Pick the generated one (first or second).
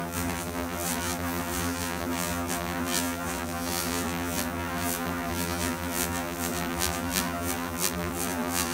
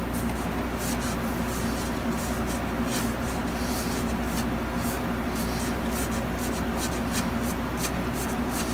first